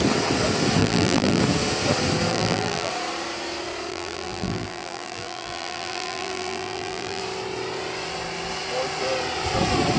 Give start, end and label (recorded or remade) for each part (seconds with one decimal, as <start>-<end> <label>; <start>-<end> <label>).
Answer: 0.0-0.8 recorded; 0.8-1.4 remade; 1.4-2.3 recorded; 2.3-2.9 remade; 2.9-3.9 recorded; 3.9-7.2 remade; 7.2-10.0 recorded